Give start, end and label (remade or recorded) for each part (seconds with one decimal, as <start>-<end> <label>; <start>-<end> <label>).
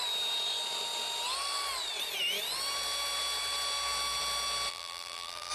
0.0-4.7 recorded; 4.7-5.5 remade